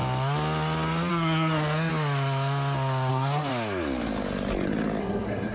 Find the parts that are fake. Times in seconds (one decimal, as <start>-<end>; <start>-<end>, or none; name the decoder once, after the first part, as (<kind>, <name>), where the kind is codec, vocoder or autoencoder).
1.1-1.9 (codec, SNAC); 3.1-3.5; 5.0-5.5